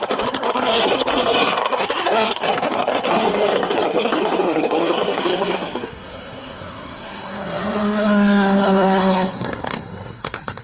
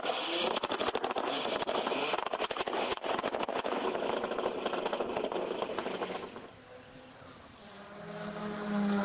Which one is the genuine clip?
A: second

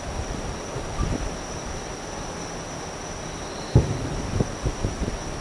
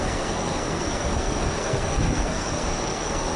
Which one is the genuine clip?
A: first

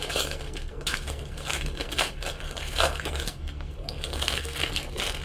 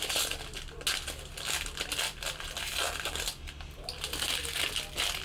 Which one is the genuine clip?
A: second